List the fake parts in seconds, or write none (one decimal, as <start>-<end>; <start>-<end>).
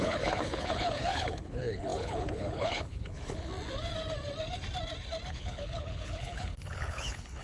0.0-3.5; 5.3-7.4